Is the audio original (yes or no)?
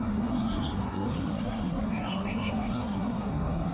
no